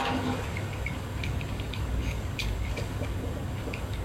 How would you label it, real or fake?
fake